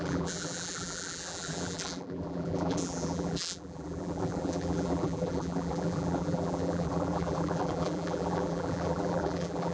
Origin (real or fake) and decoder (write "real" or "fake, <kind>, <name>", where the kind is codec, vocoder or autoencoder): fake, vocoder, BigVGAN v2